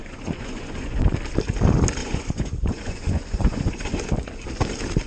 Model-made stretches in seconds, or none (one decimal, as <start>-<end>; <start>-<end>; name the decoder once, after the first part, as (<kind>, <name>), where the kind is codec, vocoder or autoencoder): 0.0-1.0 (vocoder, Vocos); 2.0-4.1